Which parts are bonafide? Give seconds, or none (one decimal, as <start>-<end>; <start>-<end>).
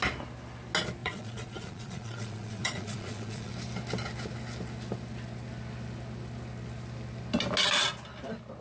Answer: 0.0-1.0; 3.5-8.6